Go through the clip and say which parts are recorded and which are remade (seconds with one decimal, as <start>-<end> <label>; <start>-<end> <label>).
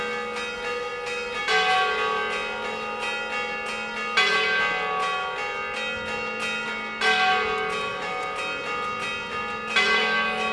0.0-10.5 recorded